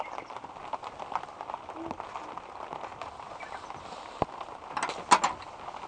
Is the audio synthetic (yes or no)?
no